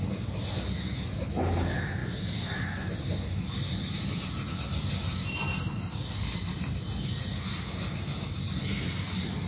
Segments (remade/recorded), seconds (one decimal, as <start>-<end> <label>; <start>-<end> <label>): 0.0-9.5 recorded